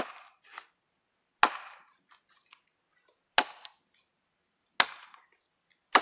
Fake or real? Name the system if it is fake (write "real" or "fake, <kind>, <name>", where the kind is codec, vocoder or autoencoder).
real